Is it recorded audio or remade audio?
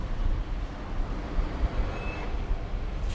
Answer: recorded